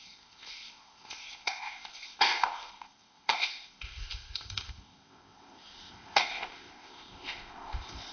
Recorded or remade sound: remade